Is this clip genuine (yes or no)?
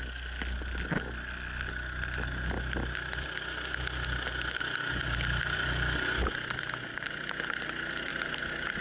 yes